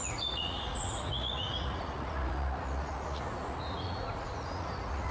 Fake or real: fake